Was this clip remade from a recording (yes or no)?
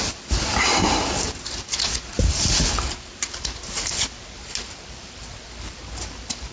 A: no